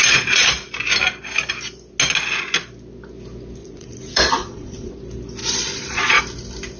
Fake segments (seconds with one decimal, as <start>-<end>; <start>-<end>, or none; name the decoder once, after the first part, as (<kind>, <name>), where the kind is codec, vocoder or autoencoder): 0.0-0.5 (vocoder, Vocos); 3.6-5.0; 5.4-6.2